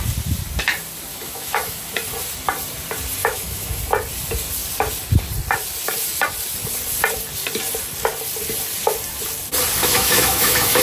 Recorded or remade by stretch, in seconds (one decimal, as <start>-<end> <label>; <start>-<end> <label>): 0.0-1.1 recorded; 1.1-1.8 remade; 1.8-3.2 recorded; 3.2-3.8 remade; 3.8-9.8 recorded; 9.8-10.8 remade